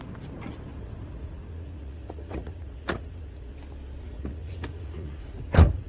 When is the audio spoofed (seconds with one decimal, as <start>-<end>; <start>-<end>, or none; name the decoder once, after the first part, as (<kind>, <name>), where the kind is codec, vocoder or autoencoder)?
0.7-3.5 (vocoder, Vocos); 4.0-5.9